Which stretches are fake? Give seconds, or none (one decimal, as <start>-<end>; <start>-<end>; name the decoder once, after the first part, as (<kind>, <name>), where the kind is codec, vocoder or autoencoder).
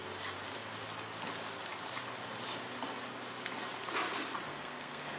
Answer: 4.5-5.2 (codec, SNAC)